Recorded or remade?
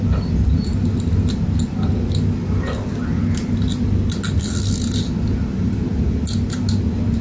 recorded